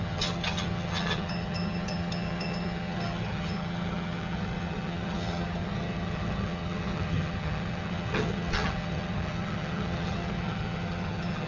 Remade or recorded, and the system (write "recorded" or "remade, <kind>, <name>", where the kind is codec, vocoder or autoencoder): remade, vocoder, HiFi-GAN